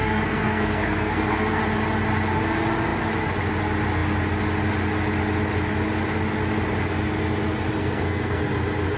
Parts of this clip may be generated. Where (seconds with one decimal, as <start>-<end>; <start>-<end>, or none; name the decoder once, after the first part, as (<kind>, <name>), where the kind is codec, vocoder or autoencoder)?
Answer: 0.0-1.6 (codec, SNAC); 7.8-8.4